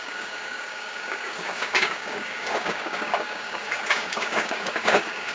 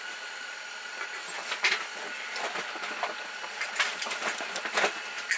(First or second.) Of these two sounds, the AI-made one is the first